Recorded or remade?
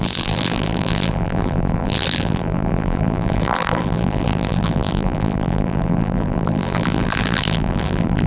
remade